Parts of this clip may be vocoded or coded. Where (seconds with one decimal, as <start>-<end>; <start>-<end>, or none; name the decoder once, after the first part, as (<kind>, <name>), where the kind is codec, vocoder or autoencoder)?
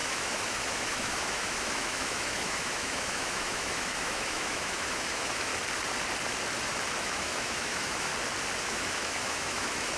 0.0-5.5 (autoencoder, DAC-VAE); 7.0-8.1; 8.6-10.0